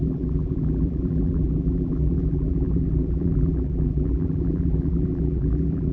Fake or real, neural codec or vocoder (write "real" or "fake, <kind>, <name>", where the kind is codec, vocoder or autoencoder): fake, vocoder, BigVGAN v2